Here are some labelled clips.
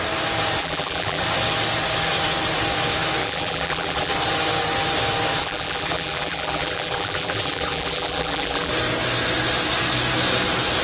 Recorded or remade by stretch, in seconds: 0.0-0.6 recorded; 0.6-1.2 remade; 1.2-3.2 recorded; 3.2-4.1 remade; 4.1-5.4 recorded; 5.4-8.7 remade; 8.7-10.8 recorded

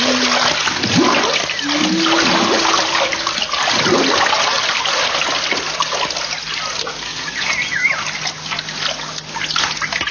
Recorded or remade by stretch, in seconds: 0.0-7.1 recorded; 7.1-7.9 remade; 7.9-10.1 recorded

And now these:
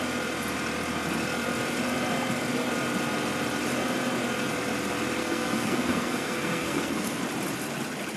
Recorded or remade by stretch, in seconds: 0.0-5.2 recorded; 5.2-7.2 remade; 7.2-8.2 recorded

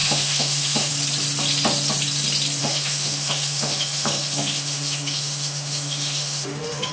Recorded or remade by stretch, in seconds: 0.0-0.9 remade; 0.9-2.6 recorded; 2.6-6.9 remade

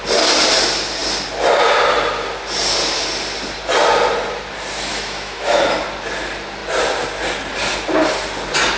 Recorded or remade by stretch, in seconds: 0.0-4.9 recorded; 4.9-5.6 remade; 5.6-8.8 recorded

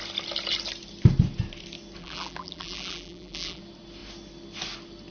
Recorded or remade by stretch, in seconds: 0.0-2.0 recorded; 2.0-3.6 remade; 3.6-5.1 recorded

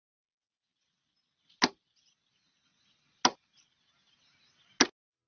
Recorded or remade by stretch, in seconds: 0.0-5.3 recorded